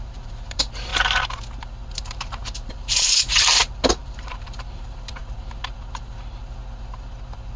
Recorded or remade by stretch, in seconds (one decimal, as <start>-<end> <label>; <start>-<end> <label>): 0.0-0.9 remade; 0.9-1.9 recorded; 1.9-5.2 remade; 5.2-7.6 recorded